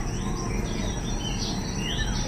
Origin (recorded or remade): recorded